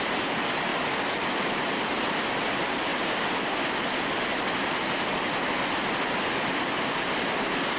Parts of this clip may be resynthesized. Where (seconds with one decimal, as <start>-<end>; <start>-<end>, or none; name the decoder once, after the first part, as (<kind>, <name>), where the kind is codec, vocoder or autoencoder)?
none